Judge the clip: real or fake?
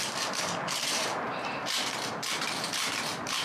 fake